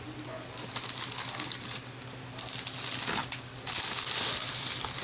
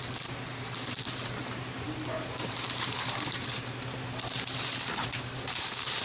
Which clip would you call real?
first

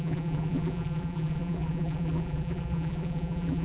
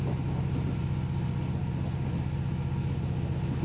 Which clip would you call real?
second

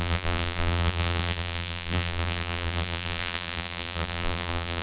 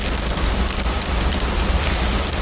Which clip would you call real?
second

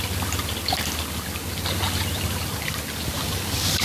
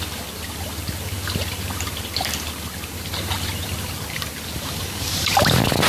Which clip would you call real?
first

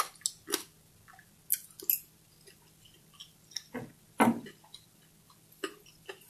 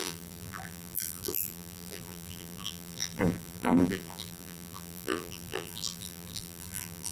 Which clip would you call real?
first